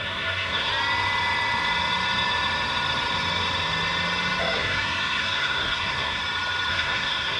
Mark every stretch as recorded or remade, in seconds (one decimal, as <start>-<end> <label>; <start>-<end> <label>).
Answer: 0.0-0.7 remade; 0.7-4.4 recorded; 4.4-6.2 remade; 6.2-6.7 recorded; 6.7-7.4 remade